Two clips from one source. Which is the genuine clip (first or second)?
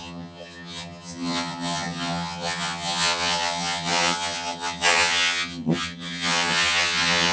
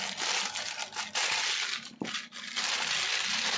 second